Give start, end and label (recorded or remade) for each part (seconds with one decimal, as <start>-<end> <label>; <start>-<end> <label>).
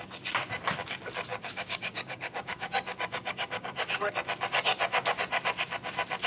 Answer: 0.0-1.3 recorded; 1.3-4.1 remade; 4.1-6.3 recorded